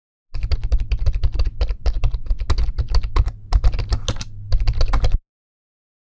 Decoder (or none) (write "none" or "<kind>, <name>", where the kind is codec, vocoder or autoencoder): none